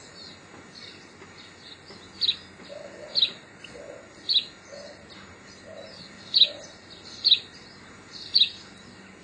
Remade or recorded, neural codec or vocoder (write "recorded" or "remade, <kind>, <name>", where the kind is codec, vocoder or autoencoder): recorded